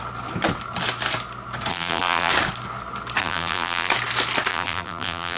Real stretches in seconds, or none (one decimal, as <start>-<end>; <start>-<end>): 0.0-1.7; 2.3-3.2; 3.9-4.5